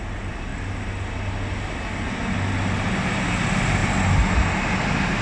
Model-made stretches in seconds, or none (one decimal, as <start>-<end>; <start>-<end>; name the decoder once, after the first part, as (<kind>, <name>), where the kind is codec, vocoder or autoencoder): none

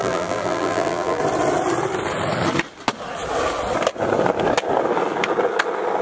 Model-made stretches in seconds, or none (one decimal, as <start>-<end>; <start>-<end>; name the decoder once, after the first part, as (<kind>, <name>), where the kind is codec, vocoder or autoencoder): 0.0-1.2 (vocoder, BigVGAN v2)

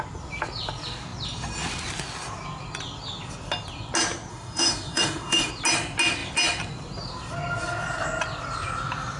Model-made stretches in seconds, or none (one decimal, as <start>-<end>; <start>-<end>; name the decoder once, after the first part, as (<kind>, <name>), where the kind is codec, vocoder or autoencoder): 4.3-5.5 (autoencoder, DAC-VAE)

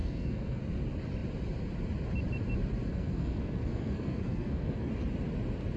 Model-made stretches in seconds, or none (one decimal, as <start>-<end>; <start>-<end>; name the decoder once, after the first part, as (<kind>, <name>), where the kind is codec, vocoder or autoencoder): 0.0-0.6 (codec, SNAC); 2.9-4.9

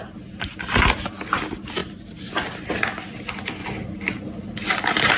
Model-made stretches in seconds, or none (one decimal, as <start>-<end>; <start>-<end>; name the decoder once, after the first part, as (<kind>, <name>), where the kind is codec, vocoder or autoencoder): 1.8-2.7 (vocoder, BigVGAN v2)